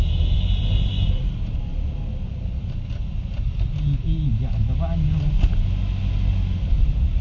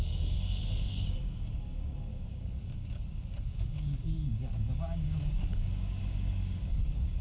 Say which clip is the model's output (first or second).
second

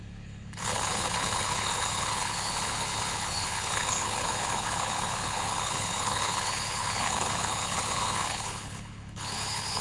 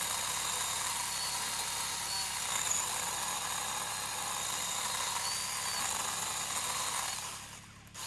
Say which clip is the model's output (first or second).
first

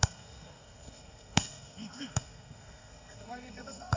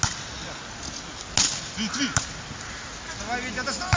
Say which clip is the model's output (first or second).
first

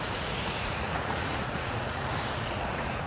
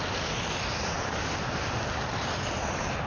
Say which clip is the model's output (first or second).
first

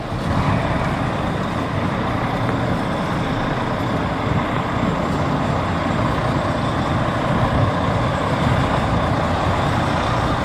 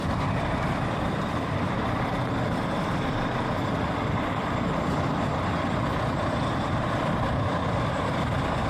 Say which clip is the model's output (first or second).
second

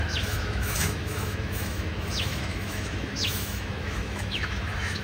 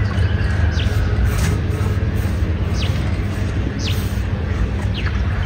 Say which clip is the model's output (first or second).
first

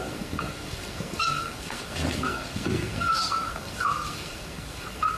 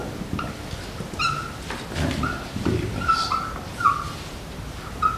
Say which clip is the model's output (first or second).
first